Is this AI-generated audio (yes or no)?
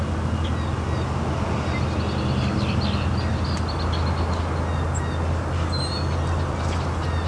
no